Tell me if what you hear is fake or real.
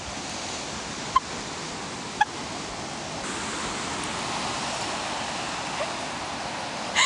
real